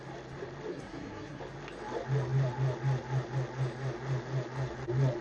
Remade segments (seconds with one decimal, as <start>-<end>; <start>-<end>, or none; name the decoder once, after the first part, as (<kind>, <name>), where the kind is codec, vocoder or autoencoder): 0.7-1.4 (codec, SNAC)